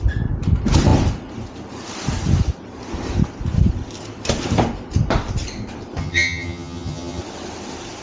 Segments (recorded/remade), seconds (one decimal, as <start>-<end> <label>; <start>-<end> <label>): 0.0-6.0 recorded; 6.0-7.2 remade; 7.2-8.0 recorded

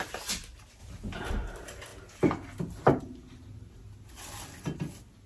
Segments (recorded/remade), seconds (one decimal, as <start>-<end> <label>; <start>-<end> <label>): 0.0-5.3 recorded

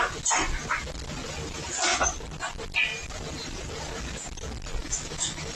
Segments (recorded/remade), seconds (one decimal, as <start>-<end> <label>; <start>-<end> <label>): 0.0-4.8 recorded; 4.8-5.5 remade

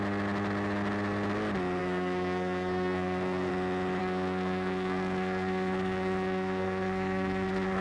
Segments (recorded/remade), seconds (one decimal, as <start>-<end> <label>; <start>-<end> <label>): 0.0-1.8 recorded; 1.8-3.5 remade; 3.5-4.0 recorded; 4.0-7.8 remade

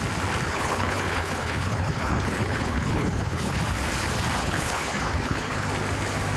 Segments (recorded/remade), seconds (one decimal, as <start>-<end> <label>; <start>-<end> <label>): 0.0-0.5 recorded; 0.5-3.6 remade; 3.6-4.4 recorded; 4.4-5.7 remade; 5.7-6.4 recorded

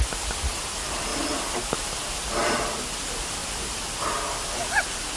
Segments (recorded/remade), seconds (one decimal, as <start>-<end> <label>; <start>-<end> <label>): 0.0-1.1 recorded; 1.1-2.5 remade; 2.5-3.4 recorded; 3.4-4.6 remade; 4.6-5.2 recorded